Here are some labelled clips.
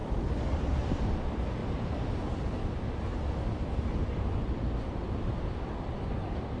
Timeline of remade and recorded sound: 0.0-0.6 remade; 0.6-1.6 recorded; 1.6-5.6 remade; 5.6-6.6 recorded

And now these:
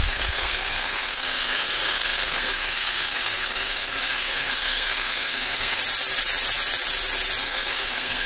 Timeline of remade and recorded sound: 0.0-5.8 remade; 5.8-7.4 recorded; 7.4-8.3 remade

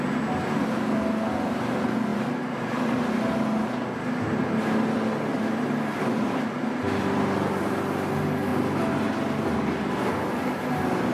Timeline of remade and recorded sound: 0.0-2.1 recorded; 2.1-3.0 remade; 3.0-5.3 recorded; 5.3-6.2 remade; 6.2-11.1 recorded

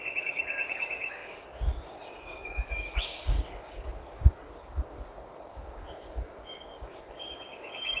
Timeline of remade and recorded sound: 0.0-8.0 remade

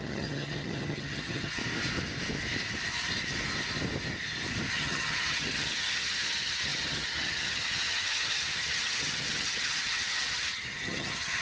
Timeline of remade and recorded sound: 0.0-1.6 remade; 1.6-4.7 recorded; 4.7-11.4 remade

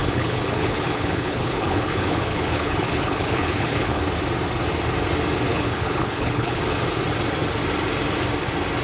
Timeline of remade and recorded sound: 0.0-4.0 remade; 4.0-5.5 recorded; 5.5-6.6 remade; 6.6-8.8 recorded

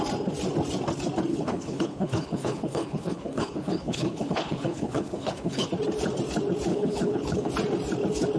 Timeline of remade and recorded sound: 0.0-1.3 recorded; 1.3-5.7 remade; 5.7-6.7 recorded; 6.7-7.5 remade; 7.5-8.4 recorded

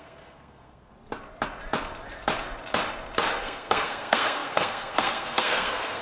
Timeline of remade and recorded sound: 0.0-0.9 remade; 0.9-3.4 recorded; 3.4-6.0 remade